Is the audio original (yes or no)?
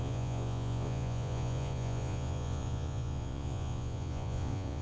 no